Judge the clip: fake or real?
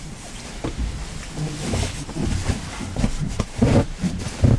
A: fake